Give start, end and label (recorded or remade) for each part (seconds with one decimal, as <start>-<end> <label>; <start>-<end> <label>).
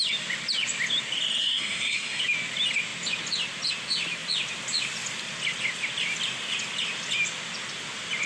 0.0-1.4 recorded; 1.4-2.2 remade; 2.2-8.3 recorded